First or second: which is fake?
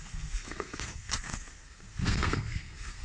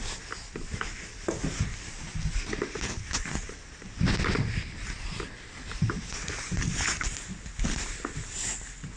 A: first